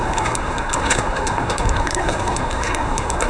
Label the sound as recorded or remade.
remade